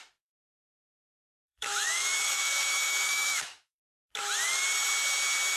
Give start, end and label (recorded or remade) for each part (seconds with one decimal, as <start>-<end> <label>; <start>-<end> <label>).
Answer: 0.0-0.4 recorded; 0.4-3.8 remade; 3.8-5.6 recorded